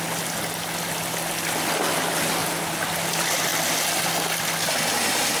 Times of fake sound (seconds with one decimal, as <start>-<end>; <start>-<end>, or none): none